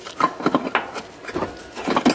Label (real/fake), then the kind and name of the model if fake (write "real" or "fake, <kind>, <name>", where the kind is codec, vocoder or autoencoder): real